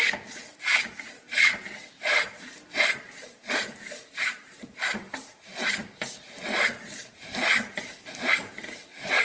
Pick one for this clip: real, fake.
fake